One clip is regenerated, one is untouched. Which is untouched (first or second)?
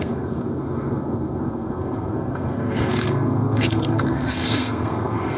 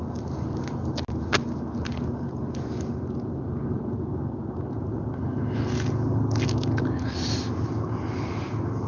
second